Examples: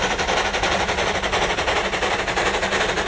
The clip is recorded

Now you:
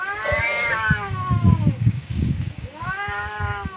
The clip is remade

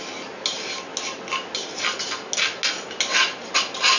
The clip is recorded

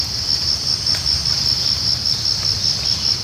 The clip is recorded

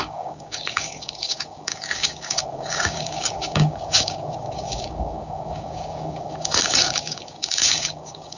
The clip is remade